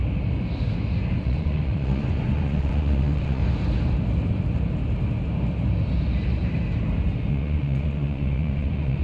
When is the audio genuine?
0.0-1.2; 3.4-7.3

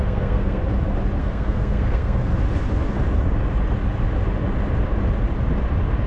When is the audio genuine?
0.6-1.2; 2.3-6.1

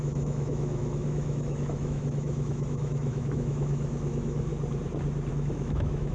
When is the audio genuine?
4.5-5.3

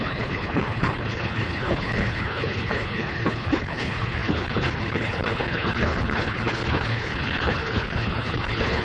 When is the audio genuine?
none